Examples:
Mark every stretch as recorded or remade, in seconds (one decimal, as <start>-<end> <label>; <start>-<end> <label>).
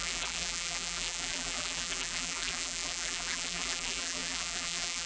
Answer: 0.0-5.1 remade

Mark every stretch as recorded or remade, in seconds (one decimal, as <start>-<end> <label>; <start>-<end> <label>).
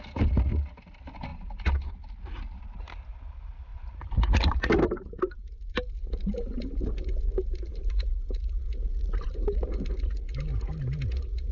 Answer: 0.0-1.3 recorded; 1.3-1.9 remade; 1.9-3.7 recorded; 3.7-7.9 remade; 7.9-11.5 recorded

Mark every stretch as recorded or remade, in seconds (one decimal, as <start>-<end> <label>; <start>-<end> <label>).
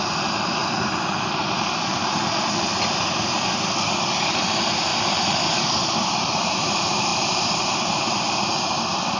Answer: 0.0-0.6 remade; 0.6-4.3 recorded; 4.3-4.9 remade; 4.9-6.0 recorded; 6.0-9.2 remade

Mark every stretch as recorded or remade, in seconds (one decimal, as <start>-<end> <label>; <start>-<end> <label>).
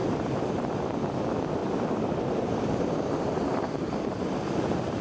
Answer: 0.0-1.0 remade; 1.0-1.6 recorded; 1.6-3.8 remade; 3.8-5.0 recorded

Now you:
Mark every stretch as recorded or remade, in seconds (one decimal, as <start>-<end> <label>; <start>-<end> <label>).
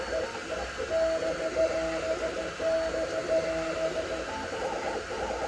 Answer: 0.0-5.5 recorded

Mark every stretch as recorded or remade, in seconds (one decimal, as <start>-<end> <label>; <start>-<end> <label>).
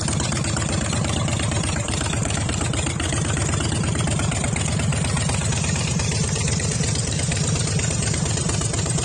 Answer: 0.0-4.9 remade; 4.9-5.5 recorded; 5.5-9.0 remade